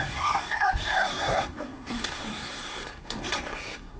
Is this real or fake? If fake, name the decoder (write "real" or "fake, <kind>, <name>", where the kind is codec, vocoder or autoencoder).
fake, codec, SNAC